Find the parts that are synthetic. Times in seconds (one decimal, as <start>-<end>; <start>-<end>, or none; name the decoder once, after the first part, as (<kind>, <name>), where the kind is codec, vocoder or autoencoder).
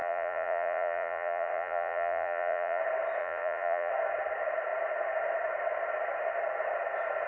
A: 0.0-2.8 (vocoder, Vocos); 3.2-3.9